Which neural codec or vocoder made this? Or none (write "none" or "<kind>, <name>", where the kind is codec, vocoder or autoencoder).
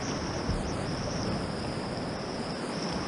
none